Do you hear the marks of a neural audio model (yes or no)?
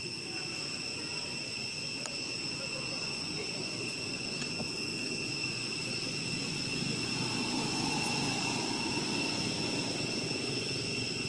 yes